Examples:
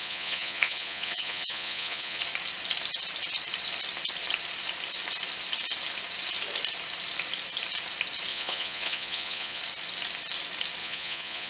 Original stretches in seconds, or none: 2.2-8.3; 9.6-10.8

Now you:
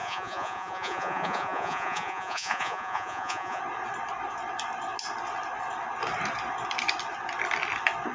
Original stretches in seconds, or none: 3.6-8.1

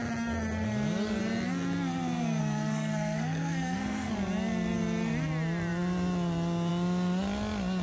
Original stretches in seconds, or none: 0.0-2.4; 4.1-7.8

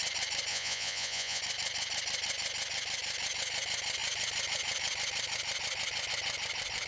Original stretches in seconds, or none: 0.0-0.5; 1.4-6.9

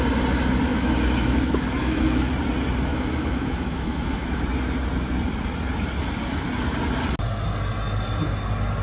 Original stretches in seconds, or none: 0.0-0.7; 2.3-2.9; 4.4-8.8

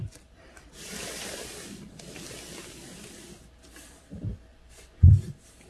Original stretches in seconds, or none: 0.0-4.5; 5.1-5.7

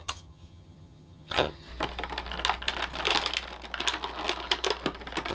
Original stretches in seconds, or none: 1.7-5.3